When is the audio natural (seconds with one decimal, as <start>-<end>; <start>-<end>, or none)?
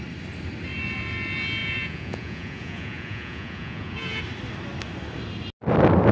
0.0-1.6; 4.2-6.1